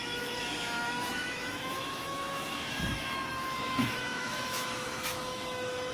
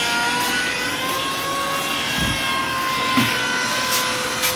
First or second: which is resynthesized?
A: first